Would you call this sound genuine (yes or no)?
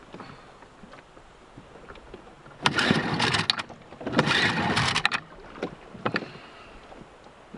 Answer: yes